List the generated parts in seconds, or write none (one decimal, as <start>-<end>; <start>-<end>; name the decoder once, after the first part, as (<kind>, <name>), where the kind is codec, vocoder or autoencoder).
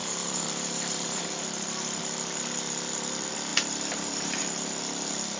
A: 0.0-1.2 (vocoder, BigVGAN v2); 3.5-4.4